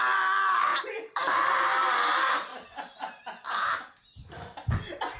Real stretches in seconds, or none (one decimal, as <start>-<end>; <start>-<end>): 0.0-0.7; 1.3-5.2